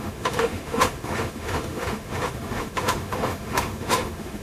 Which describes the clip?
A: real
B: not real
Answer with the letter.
B